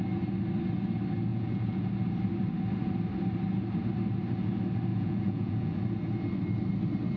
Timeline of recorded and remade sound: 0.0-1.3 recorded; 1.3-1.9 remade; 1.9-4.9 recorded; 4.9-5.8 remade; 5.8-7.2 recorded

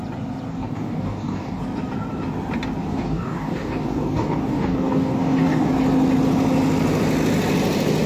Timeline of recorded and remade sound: 0.0-0.5 recorded; 0.5-1.6 remade; 1.6-2.8 recorded; 2.8-5.7 remade; 5.7-8.1 recorded

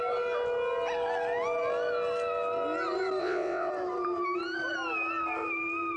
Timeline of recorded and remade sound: 0.0-3.2 recorded; 3.2-3.7 remade; 3.7-6.0 recorded